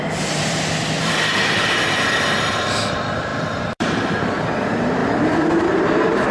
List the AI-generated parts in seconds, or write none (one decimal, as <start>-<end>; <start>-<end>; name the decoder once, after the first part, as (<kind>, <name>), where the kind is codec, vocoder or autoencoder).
0.0-5.0 (vocoder, BigVGAN v2); 5.5-6.3